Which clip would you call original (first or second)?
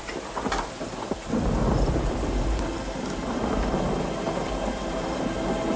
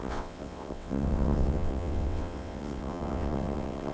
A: first